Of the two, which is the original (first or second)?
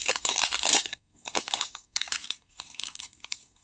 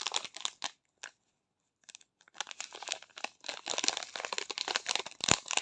second